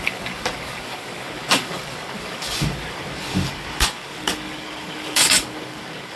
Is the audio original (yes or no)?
no